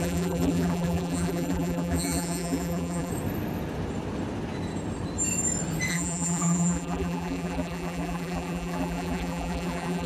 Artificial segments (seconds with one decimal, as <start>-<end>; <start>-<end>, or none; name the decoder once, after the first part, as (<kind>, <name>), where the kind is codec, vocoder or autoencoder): 0.0-3.1 (vocoder, BigVGAN v2); 5.9-10.1